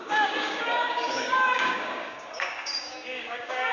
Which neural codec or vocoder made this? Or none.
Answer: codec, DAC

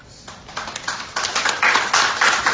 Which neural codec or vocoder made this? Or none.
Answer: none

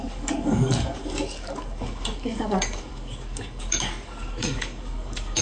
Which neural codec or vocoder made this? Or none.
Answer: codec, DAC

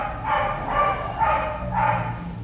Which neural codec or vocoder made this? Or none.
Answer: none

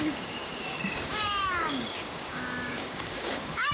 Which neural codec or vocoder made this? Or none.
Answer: codec, DAC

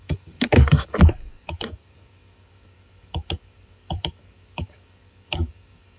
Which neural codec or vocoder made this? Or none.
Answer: codec, DAC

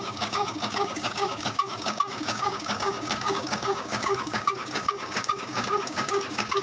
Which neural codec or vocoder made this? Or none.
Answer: codec, DAC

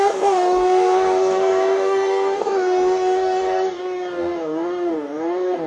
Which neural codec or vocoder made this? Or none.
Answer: codec, DAC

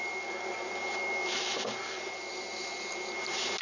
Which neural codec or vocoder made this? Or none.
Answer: none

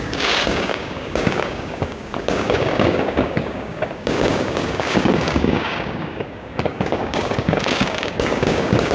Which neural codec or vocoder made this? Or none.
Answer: codec, DAC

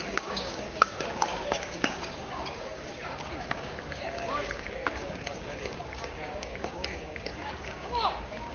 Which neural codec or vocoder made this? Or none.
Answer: codec, DAC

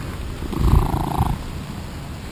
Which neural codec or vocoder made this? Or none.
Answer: none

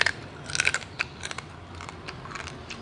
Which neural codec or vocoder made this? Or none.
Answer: none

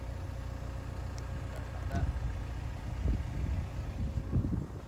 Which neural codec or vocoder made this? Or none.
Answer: none